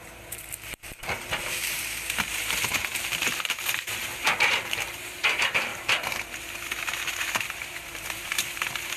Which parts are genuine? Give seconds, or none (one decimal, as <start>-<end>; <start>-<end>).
none